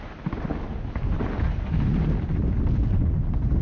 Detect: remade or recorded recorded